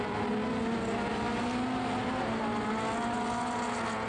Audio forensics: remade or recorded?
recorded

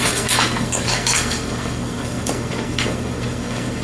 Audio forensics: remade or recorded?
remade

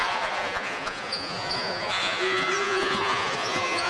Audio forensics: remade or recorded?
remade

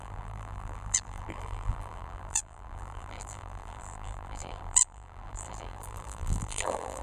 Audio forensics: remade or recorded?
remade